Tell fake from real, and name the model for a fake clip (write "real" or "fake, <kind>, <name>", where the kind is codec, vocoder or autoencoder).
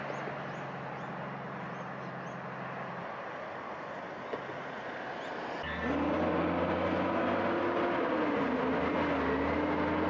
real